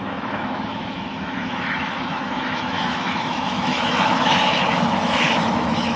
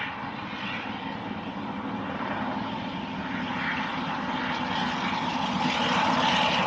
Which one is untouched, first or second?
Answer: second